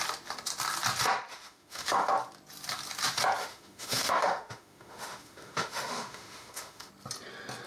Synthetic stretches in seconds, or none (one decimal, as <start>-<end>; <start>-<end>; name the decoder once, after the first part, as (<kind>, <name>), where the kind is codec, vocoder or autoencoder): 1.3-2.1 (autoencoder, DAC-VAE); 3.4-6.9